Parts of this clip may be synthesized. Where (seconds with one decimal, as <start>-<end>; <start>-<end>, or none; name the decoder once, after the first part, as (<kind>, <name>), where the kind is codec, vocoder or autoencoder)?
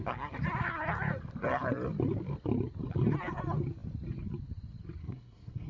5.0-5.7 (codec, SNAC)